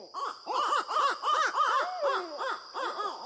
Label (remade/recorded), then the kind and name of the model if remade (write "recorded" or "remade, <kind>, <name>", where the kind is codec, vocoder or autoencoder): recorded